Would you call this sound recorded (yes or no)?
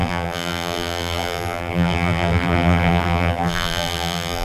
no